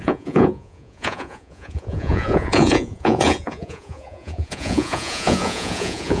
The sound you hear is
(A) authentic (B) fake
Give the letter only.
B